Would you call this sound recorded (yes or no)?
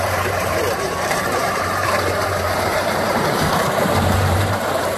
no